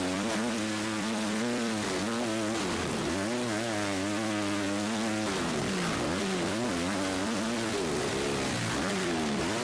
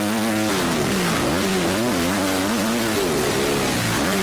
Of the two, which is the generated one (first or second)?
first